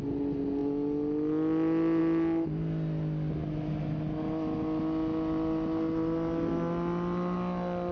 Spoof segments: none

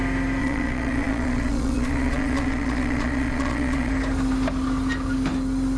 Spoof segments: 0.4-3.9

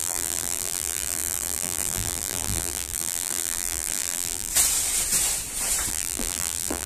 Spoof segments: 0.0-4.5; 5.9-6.9

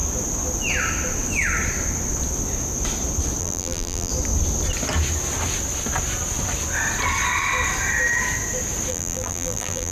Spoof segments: 3.4-4.1; 8.9-9.9

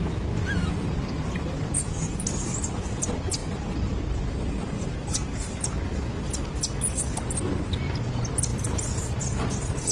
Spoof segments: none

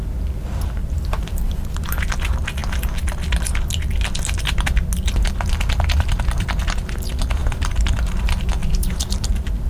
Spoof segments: 0.8-1.7; 7.4-7.9; 8.6-9.7